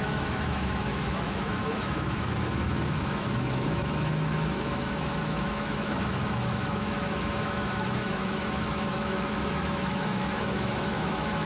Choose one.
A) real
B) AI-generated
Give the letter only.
B